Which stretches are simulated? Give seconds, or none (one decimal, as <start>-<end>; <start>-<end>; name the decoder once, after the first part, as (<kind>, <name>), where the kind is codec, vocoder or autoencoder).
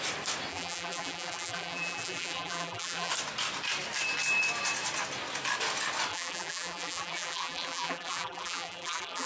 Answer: 0.5-3.1 (vocoder, BigVGAN v2); 6.1-9.3